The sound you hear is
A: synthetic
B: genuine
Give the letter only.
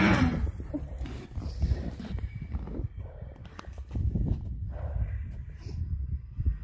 A